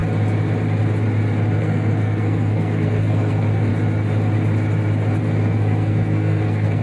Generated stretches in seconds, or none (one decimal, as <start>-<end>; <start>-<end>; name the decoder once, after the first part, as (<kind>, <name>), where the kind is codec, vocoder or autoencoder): 1.6-3.7 (codec, SNAC); 5.2-6.8